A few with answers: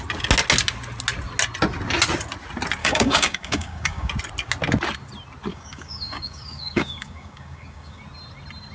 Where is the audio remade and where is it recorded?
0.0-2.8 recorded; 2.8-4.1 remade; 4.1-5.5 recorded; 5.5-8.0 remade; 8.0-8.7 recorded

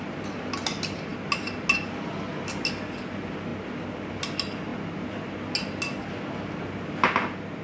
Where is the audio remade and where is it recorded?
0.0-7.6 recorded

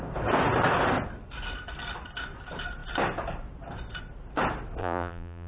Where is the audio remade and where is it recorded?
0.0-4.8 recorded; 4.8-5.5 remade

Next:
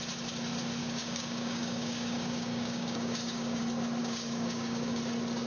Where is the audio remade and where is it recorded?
0.0-0.8 recorded; 0.8-3.6 remade; 3.6-4.0 recorded; 4.0-5.0 remade; 5.0-5.5 recorded

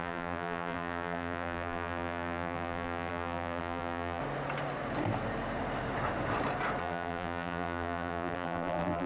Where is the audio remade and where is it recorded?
0.0-4.2 remade; 4.2-6.8 recorded; 6.8-9.1 remade